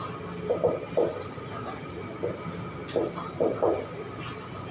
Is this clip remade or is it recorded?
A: recorded